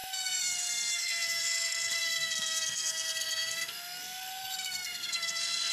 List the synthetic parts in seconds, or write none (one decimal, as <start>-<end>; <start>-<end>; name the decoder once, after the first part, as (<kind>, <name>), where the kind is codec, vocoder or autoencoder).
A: 0.0-5.7 (codec, SNAC)